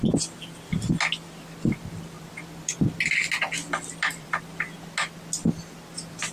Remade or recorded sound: recorded